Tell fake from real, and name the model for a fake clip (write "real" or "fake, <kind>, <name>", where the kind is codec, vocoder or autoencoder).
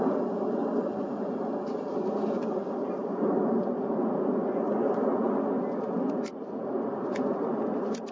real